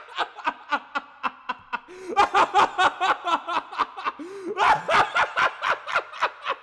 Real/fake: real